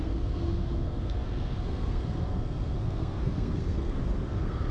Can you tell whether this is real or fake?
fake